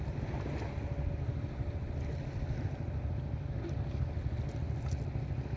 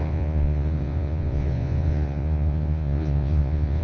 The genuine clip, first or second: first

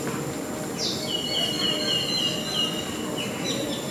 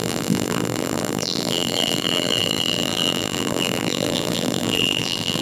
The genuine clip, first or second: first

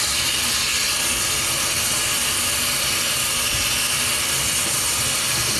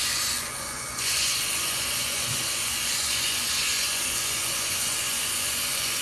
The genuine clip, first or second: first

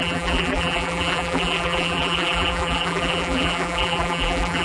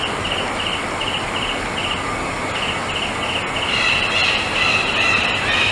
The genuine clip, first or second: second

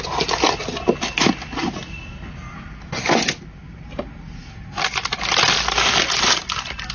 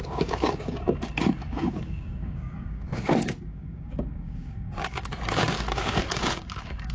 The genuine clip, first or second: first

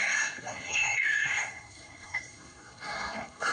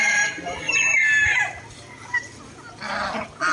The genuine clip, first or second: second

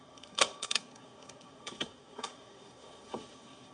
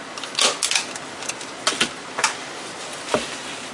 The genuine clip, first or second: second